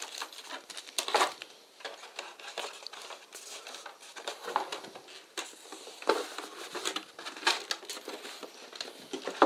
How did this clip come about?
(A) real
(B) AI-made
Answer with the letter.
A